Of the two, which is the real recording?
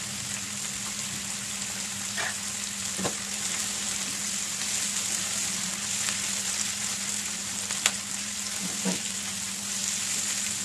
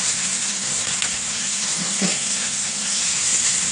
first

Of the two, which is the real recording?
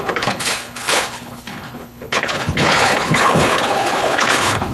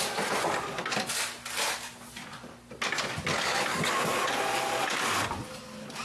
second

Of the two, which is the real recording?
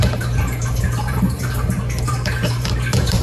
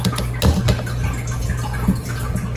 second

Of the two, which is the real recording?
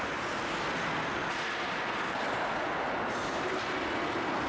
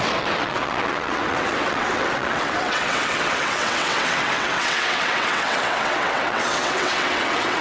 first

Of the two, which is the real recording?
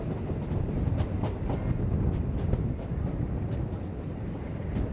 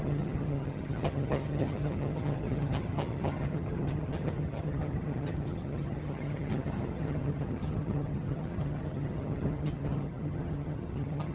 first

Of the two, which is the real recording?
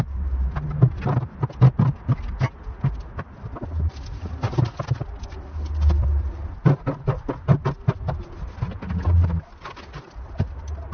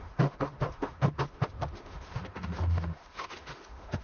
first